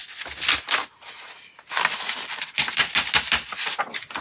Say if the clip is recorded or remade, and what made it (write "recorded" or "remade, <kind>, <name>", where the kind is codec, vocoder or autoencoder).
recorded